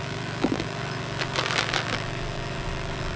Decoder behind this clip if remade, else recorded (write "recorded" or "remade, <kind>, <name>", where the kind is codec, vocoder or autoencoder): remade, vocoder, BigVGAN v2